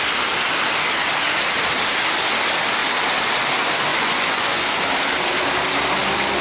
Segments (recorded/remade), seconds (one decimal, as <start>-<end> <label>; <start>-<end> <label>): 0.0-3.9 recorded; 3.9-4.8 remade; 4.8-6.4 recorded